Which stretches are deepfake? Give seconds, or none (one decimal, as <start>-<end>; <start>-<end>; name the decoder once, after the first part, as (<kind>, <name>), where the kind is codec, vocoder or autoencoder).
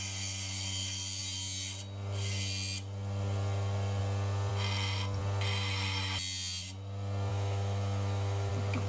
7.3-8.5 (autoencoder, DAC-VAE)